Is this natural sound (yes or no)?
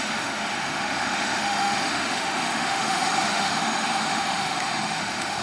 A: no